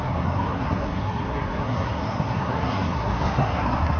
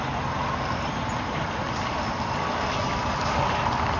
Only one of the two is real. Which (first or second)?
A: second